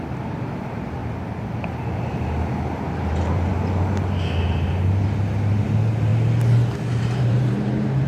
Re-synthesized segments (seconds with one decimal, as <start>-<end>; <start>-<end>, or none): 0.0-1.0; 2.5-3.5; 5.5-6.1; 7.0-8.1